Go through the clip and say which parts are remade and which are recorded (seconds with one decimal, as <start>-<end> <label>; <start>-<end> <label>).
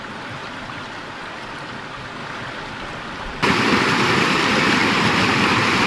0.0-0.4 recorded; 0.4-1.2 remade; 1.2-2.2 recorded; 2.2-3.5 remade; 3.5-4.8 recorded; 4.8-5.9 remade